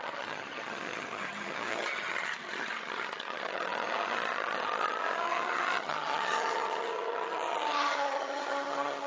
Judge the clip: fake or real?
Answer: fake